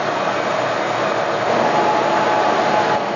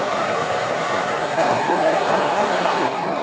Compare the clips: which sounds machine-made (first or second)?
second